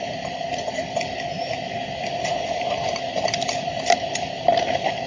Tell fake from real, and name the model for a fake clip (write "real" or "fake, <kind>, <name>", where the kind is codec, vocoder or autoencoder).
real